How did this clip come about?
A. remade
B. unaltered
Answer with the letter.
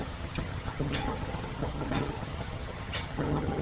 A